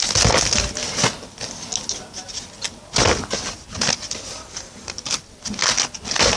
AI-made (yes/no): no